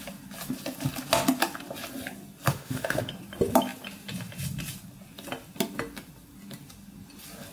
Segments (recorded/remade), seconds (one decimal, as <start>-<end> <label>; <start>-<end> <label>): 0.0-2.5 recorded; 2.5-3.1 remade; 3.1-7.5 recorded